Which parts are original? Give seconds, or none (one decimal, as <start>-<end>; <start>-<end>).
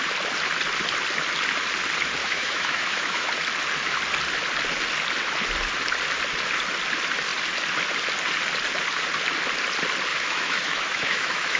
0.0-2.2; 3.3-10.1